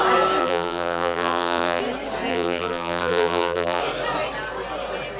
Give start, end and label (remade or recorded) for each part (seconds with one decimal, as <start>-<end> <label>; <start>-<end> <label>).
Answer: 0.0-0.4 recorded; 0.4-1.8 remade; 1.8-2.3 recorded; 2.3-3.8 remade; 3.8-5.2 recorded